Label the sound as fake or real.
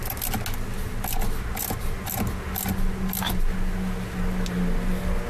real